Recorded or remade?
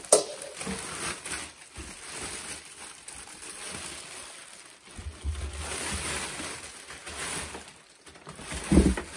recorded